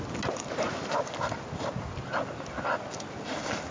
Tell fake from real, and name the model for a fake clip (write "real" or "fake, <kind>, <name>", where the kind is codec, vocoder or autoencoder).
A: real